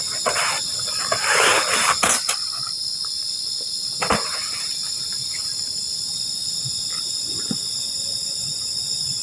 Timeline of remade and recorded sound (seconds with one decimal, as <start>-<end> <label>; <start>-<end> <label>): 0.0-9.2 recorded